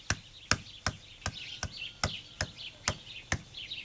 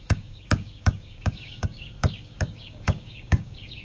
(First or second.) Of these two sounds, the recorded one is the first